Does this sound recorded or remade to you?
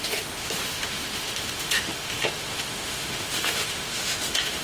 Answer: remade